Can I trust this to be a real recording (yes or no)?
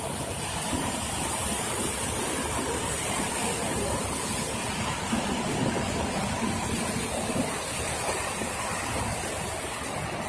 yes